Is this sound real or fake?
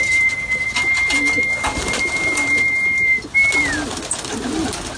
real